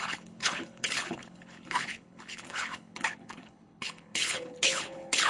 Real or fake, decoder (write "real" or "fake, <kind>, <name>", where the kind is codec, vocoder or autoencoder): fake, codec, HILCodec